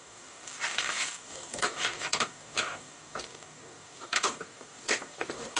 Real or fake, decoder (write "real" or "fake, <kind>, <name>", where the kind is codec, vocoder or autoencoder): fake, codec, DAC